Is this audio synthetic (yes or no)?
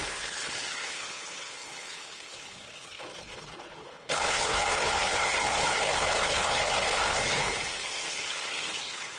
yes